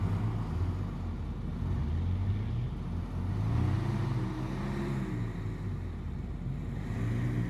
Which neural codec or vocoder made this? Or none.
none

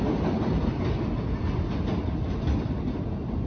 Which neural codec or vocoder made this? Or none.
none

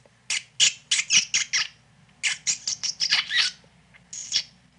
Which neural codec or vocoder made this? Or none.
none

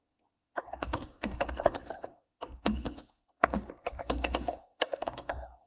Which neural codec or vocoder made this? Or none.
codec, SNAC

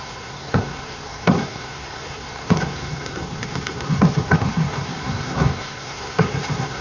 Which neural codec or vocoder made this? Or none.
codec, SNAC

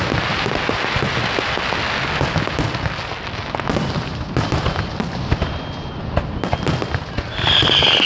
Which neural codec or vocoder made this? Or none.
none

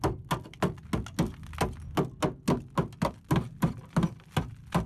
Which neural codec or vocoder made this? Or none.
none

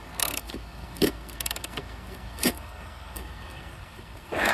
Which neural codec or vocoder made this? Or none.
codec, SNAC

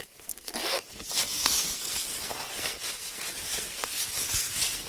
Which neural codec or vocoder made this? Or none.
codec, SNAC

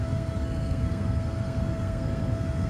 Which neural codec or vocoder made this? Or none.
codec, SNAC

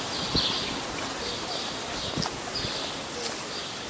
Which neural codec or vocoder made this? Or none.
none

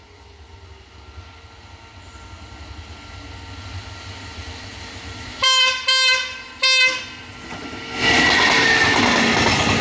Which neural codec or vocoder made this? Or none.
none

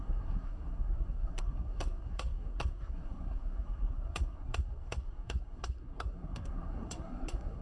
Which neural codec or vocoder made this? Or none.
codec, SNAC